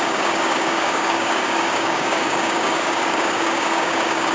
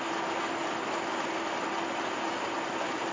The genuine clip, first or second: second